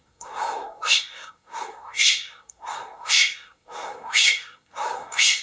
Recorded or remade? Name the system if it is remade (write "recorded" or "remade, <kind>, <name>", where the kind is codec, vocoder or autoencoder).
remade, codec, SNAC